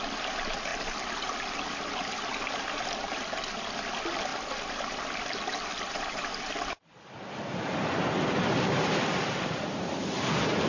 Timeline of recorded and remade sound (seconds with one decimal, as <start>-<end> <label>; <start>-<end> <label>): 0.0-10.7 recorded